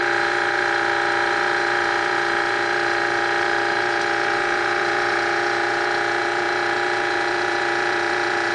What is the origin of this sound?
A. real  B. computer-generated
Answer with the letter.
B